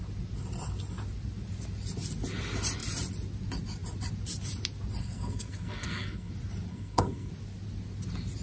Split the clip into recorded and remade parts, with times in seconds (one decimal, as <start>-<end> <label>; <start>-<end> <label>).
0.0-5.0 recorded; 5.0-6.3 remade; 6.3-6.7 recorded; 6.7-7.3 remade; 7.3-8.4 recorded